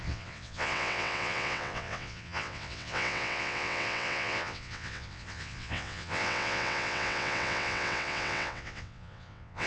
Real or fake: fake